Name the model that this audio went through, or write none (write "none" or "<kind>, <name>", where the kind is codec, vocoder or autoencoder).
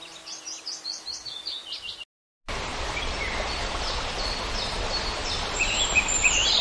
none